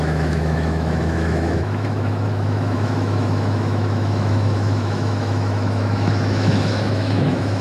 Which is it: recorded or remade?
remade